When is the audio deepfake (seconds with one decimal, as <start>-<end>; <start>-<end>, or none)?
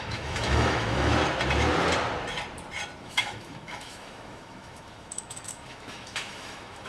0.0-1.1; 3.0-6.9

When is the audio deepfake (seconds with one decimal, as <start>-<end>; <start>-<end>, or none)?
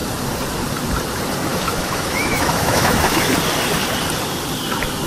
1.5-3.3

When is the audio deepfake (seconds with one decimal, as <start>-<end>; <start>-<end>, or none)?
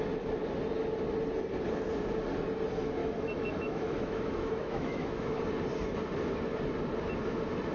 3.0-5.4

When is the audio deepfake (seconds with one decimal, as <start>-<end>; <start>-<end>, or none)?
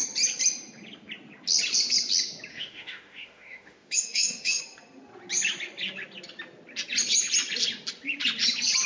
2.5-4.6